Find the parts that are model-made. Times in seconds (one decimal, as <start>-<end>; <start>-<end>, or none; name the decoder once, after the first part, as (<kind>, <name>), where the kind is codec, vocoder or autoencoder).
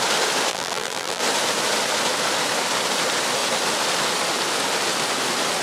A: 0.5-1.2 (vocoder, BigVGAN v2)